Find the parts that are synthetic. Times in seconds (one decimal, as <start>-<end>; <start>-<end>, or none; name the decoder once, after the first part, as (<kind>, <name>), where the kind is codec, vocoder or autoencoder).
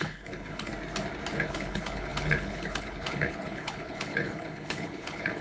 0.0-0.7 (codec, HILCodec); 1.4-5.4